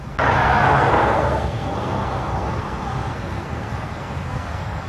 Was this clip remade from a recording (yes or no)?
yes